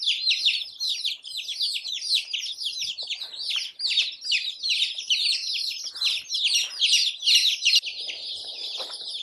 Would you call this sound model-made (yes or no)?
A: no